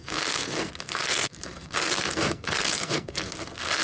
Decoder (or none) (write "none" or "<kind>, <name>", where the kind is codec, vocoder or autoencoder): codec, SNAC